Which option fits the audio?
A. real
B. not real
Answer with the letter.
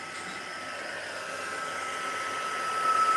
A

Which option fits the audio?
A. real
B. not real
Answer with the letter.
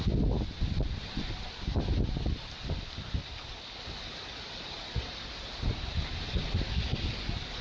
A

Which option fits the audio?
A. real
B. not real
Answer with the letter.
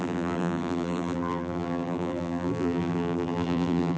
B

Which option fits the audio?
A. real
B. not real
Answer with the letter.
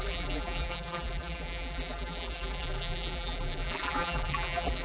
B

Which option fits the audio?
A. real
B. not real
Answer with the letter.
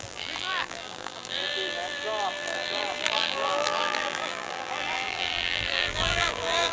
B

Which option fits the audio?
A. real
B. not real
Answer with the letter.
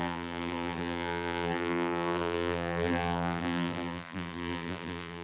B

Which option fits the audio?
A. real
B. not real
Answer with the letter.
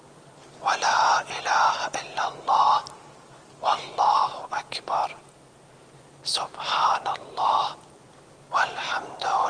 A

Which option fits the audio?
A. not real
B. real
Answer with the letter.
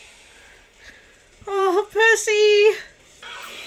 A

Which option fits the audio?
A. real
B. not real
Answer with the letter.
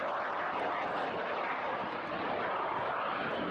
B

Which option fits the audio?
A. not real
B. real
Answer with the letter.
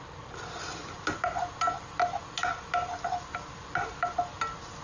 B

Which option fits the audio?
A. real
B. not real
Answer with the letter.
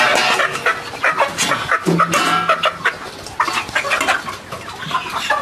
A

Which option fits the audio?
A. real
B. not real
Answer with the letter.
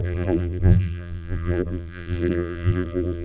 B